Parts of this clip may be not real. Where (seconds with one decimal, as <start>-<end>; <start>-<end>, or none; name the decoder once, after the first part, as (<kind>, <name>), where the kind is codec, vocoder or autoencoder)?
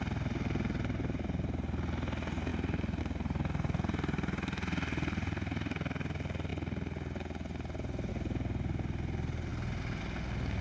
none